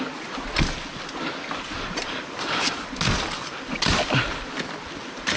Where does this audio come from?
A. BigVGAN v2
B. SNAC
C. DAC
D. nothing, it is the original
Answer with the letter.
D